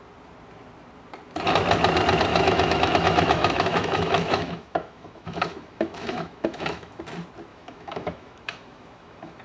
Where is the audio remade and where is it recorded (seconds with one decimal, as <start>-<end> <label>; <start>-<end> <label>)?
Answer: 0.0-2.3 recorded; 2.3-7.0 remade; 7.0-7.5 recorded; 7.5-9.4 remade